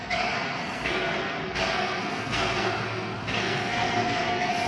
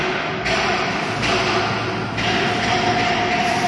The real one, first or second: second